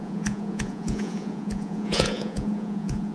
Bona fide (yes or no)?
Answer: no